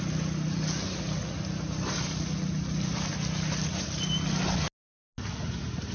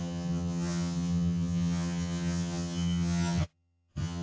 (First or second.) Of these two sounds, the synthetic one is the second